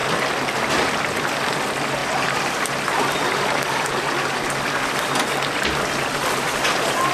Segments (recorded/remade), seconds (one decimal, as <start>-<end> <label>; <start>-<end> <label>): 0.0-7.1 recorded